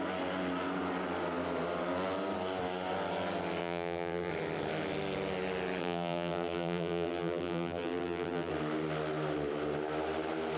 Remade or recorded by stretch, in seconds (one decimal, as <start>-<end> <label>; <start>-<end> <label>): 0.0-3.6 recorded; 3.6-4.3 remade; 4.3-5.8 recorded; 5.8-8.5 remade; 8.5-10.6 recorded